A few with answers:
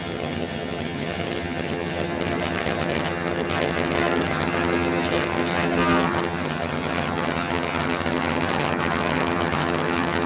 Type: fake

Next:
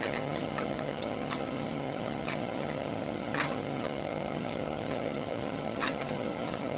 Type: fake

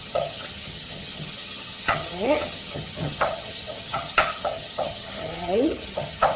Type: fake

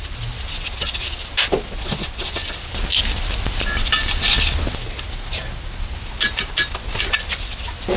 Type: real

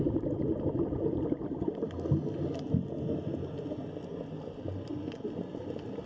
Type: real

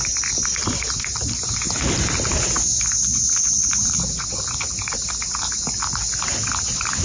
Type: real